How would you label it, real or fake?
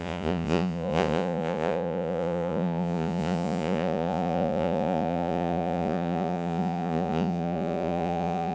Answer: fake